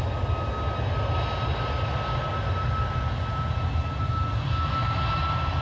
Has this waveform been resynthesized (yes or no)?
no